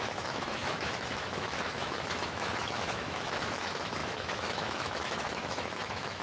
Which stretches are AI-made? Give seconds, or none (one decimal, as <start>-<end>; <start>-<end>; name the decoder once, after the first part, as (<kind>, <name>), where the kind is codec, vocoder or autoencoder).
0.0-6.2 (autoencoder, DAC-VAE)